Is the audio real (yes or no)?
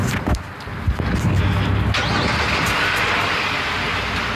yes